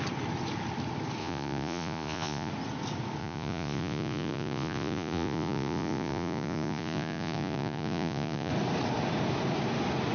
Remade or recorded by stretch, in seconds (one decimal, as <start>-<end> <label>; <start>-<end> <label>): 0.0-1.2 recorded; 1.2-2.5 remade; 2.5-3.2 recorded; 3.2-8.5 remade; 8.5-10.1 recorded